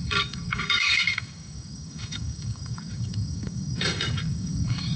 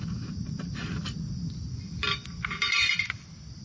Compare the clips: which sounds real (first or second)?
second